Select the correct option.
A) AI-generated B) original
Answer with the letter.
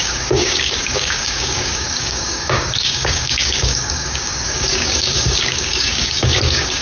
A